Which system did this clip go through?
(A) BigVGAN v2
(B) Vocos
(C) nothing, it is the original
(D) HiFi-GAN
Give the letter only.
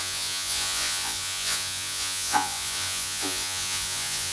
B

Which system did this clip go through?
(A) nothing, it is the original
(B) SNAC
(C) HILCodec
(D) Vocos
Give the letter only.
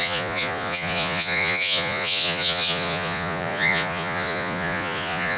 D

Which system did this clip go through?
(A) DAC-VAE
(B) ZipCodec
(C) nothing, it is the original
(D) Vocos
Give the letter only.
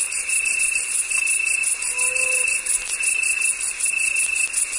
C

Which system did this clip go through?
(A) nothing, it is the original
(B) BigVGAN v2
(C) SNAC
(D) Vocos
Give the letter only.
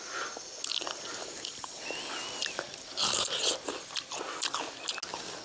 A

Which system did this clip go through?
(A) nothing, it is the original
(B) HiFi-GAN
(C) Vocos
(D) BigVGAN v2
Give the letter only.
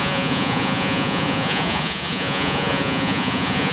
C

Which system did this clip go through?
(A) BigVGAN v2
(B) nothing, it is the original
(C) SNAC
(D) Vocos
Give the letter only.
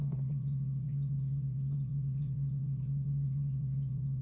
D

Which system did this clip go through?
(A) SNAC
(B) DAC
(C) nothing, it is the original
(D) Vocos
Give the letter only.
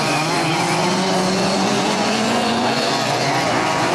D